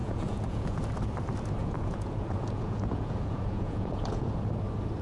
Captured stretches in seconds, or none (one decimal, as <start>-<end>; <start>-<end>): 0.8-1.6; 4.3-5.0